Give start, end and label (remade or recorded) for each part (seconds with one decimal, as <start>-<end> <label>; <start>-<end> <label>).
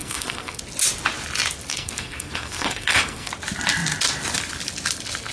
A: 0.0-0.6 remade; 0.6-1.7 recorded; 1.7-3.3 remade; 3.3-5.3 recorded